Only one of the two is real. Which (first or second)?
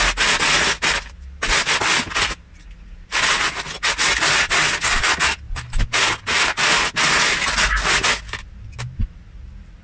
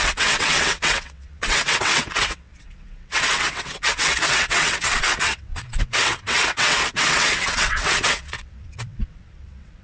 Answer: first